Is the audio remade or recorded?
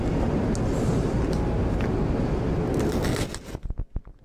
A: recorded